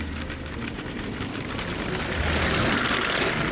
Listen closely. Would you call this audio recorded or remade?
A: recorded